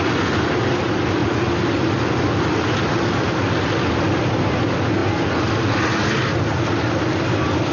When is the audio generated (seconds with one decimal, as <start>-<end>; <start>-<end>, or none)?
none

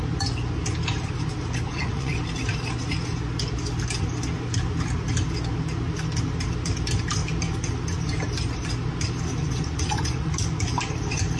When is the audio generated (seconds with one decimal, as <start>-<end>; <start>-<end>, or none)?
1.7-2.2; 9.4-10.3

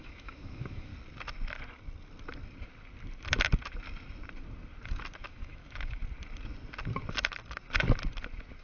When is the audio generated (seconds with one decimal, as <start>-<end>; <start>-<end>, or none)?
0.0-0.9; 5.2-6.0

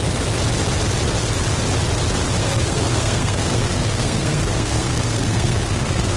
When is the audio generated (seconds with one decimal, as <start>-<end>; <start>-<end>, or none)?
2.4-6.2

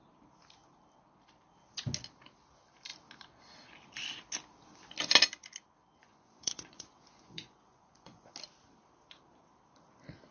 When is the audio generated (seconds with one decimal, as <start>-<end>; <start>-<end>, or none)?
6.0-8.3

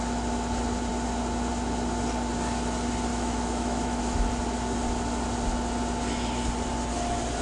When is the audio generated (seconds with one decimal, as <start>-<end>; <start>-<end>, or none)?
3.1-4.0

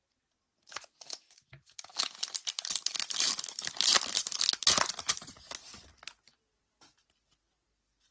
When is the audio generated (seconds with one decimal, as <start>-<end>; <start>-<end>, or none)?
4.6-5.3